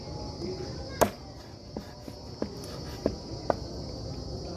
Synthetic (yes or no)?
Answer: no